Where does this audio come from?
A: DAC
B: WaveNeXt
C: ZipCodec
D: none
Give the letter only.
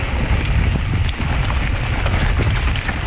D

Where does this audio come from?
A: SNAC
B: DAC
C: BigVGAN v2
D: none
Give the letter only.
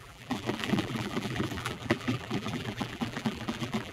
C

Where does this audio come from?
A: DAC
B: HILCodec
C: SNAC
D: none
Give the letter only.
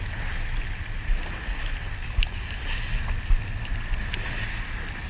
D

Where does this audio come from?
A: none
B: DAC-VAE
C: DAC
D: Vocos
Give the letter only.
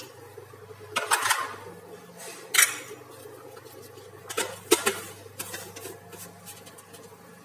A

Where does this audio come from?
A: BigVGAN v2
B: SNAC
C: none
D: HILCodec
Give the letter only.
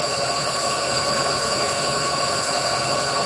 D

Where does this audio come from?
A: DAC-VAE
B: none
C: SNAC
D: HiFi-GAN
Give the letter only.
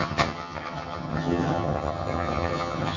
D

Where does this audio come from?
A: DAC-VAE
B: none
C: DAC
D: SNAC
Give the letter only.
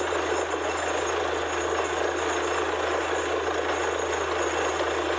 B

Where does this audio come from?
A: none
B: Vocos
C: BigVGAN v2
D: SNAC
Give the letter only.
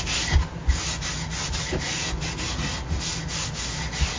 A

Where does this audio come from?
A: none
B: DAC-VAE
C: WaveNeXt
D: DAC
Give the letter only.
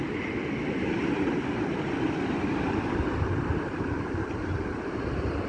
A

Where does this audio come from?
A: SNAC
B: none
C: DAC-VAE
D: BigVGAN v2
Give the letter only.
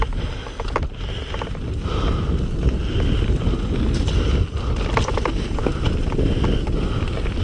B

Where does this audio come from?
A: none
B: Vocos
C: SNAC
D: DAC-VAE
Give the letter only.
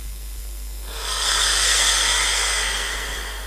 C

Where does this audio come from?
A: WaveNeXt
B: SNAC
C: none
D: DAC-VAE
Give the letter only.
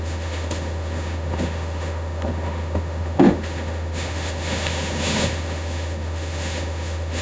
D